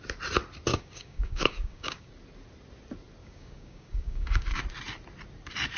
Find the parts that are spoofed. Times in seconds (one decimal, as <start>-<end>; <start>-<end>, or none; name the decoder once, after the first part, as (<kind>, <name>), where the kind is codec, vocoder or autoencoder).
0.7-2.1 (codec, DAC); 3.2-4.6